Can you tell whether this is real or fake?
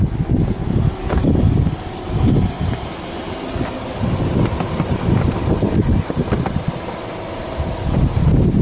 real